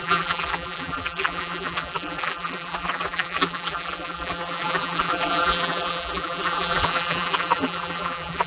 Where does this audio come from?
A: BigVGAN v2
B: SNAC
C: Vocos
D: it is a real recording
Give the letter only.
A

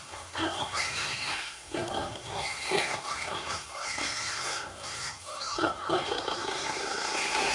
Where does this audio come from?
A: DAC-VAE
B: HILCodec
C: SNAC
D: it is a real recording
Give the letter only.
C